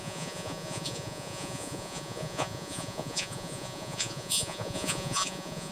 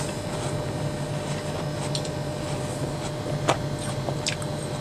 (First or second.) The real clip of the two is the second